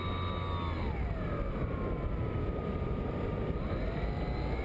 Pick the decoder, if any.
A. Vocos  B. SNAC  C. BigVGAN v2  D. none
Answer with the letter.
D